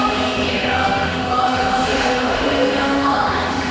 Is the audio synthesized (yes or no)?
yes